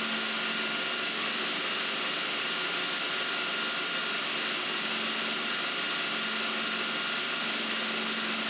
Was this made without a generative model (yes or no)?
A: yes